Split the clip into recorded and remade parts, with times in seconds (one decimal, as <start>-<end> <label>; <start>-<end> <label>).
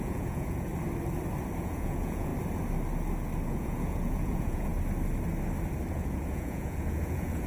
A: 0.0-0.7 remade; 0.7-1.6 recorded; 1.6-2.3 remade; 2.3-3.4 recorded; 3.4-4.7 remade; 4.7-5.9 recorded; 5.9-7.5 remade